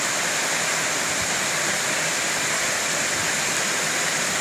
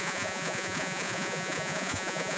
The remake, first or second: second